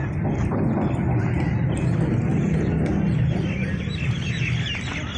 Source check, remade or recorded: recorded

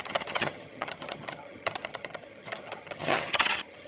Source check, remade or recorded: remade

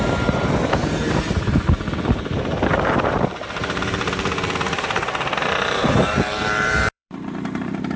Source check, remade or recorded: remade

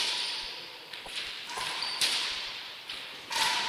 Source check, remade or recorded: remade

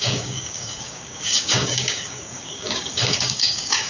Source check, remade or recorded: remade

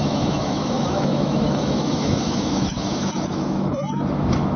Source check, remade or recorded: remade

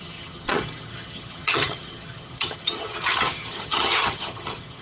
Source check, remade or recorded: remade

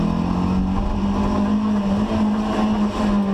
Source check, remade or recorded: recorded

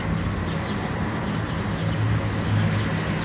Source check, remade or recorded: recorded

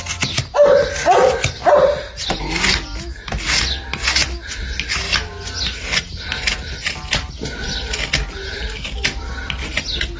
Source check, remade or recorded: recorded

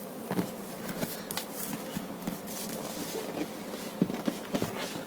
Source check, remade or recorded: recorded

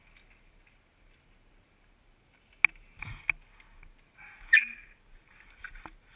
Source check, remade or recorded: recorded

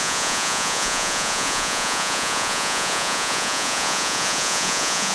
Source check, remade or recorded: remade